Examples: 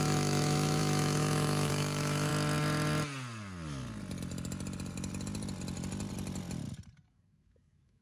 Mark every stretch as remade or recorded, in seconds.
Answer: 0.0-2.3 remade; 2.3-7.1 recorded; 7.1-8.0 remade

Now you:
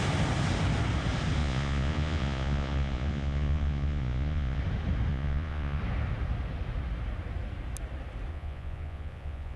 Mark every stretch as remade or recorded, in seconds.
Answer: 0.0-1.4 recorded; 1.4-4.6 remade; 4.6-5.1 recorded; 5.1-5.8 remade; 5.8-8.3 recorded; 8.3-9.6 remade

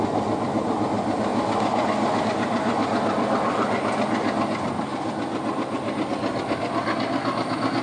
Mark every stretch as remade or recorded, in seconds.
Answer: 0.0-7.8 recorded

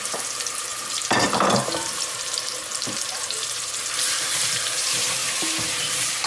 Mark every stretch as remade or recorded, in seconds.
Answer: 0.0-5.2 remade; 5.2-5.7 recorded; 5.7-6.3 remade

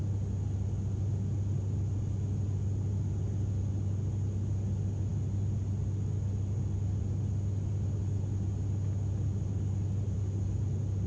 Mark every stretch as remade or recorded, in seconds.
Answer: 0.0-11.1 recorded

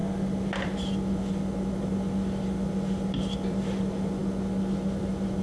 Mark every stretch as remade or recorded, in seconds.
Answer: 0.0-5.4 recorded